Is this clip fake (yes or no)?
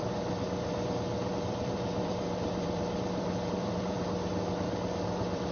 yes